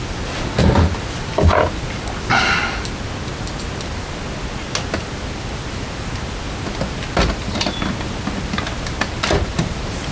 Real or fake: real